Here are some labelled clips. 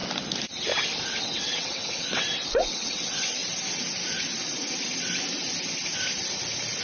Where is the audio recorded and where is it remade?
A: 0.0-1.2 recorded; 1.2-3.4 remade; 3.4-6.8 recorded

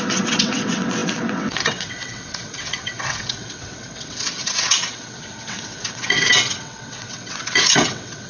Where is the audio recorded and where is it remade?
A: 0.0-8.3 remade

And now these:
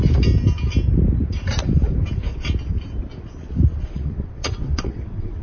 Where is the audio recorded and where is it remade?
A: 0.0-3.7 recorded; 3.7-5.4 remade

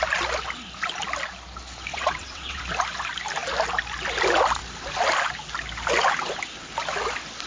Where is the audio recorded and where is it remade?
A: 0.0-1.9 recorded; 1.9-2.6 remade; 2.6-7.5 recorded